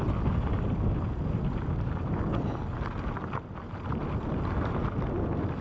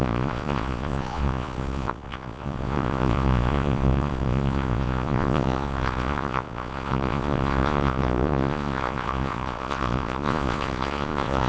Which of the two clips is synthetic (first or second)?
second